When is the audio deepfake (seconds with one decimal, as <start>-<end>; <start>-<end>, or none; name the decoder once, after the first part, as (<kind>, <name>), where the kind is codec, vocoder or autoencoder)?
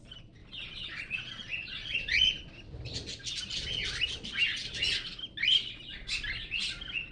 0.4-2.5 (vocoder, Vocos)